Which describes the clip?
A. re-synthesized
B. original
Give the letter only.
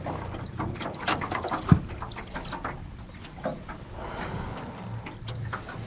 B